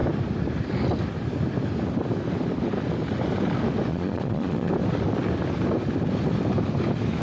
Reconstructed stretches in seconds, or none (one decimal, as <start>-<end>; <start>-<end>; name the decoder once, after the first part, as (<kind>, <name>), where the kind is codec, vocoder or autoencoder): 3.9-4.7 (vocoder, Vocos)